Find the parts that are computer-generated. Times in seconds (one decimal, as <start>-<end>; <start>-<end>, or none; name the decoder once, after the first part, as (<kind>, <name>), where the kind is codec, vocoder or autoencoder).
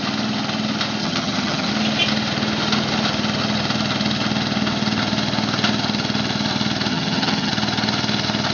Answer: 1.0-1.7 (vocoder, HiFi-GAN); 6.9-7.5